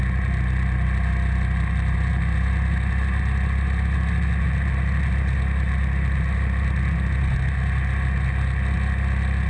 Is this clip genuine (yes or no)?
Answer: yes